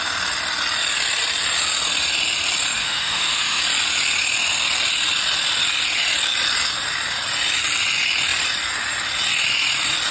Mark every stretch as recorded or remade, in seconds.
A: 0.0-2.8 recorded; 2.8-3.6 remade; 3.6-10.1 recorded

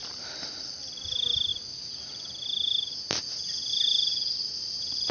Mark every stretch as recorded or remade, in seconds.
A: 0.0-5.1 recorded

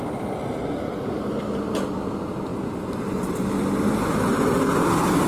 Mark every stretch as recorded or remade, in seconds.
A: 0.0-2.5 recorded; 2.5-3.5 remade; 3.5-5.3 recorded

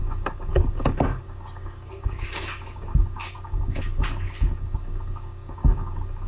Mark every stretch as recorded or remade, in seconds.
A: 0.0-6.3 remade

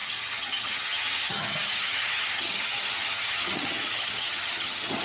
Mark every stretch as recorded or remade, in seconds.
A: 0.0-5.0 remade